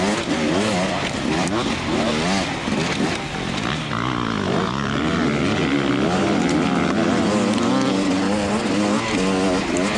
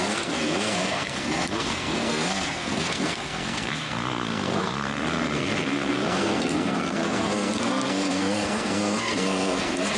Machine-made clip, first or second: second